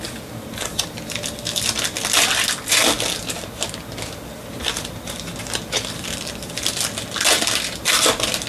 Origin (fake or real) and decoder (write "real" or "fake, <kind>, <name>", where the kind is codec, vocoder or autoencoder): real